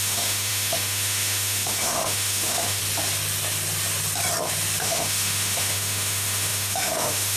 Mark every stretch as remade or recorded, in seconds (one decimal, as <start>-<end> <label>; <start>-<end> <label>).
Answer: 0.0-2.8 remade; 2.8-4.8 recorded; 4.8-7.4 remade